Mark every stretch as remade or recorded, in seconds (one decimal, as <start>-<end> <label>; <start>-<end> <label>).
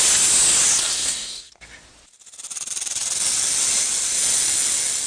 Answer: 0.0-0.9 recorded; 0.9-1.5 remade; 1.5-5.1 recorded